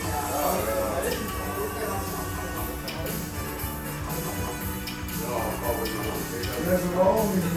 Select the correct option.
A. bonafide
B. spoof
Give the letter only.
A